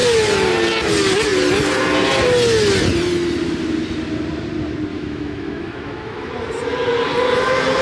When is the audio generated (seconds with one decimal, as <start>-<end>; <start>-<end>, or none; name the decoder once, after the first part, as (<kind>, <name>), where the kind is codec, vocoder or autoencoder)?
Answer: 4.9-6.3 (autoencoder, DAC-VAE)